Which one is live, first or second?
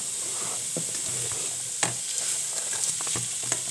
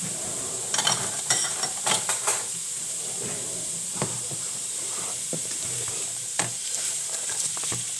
first